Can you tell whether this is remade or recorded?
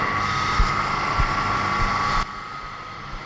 recorded